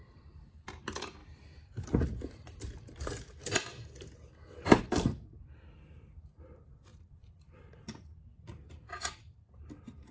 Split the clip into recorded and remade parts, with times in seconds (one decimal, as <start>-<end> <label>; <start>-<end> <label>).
0.0-1.2 remade; 1.2-4.8 recorded; 4.8-10.1 remade